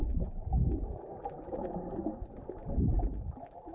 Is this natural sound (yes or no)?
yes